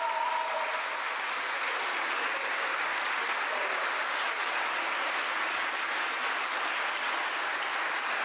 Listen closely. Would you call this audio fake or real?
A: real